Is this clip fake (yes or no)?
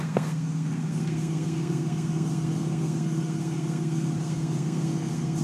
yes